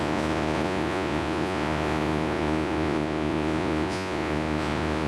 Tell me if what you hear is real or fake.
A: fake